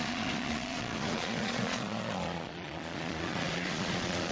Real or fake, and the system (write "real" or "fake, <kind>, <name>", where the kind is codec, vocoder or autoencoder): fake, vocoder, Vocos